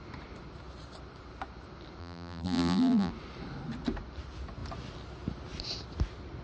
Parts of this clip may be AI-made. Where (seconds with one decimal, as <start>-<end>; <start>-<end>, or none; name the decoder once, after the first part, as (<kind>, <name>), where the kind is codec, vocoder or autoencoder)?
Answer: 2.0-3.1 (vocoder, BigVGAN v2)